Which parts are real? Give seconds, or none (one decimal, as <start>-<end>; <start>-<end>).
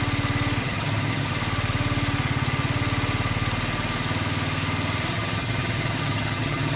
0.0-0.6; 1.3-5.1